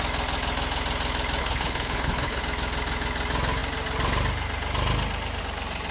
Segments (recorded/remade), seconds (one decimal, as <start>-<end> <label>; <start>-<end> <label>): 0.0-1.4 recorded; 1.4-2.4 remade; 2.4-5.9 recorded